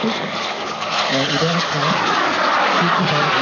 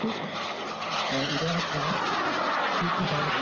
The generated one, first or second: first